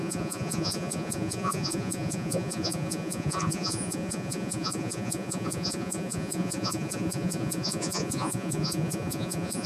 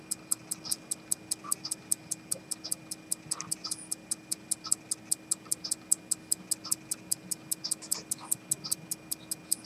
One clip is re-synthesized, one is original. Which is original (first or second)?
second